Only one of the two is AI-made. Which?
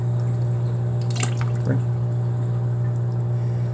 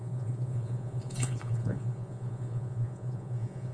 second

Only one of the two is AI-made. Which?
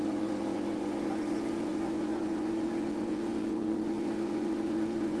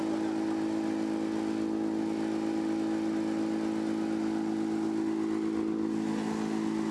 first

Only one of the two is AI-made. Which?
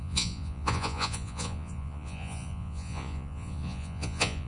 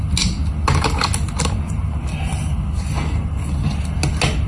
first